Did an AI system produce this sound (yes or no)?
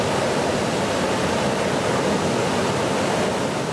no